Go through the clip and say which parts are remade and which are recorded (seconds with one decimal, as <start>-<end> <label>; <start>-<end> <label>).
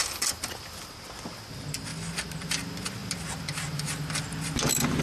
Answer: 0.0-5.0 recorded